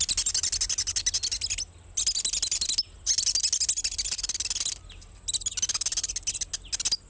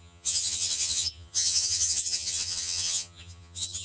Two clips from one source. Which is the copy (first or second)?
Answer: second